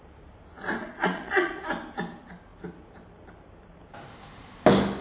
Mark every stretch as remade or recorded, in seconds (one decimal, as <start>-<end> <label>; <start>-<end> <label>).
0.0-0.8 recorded; 0.8-1.5 remade; 1.5-5.0 recorded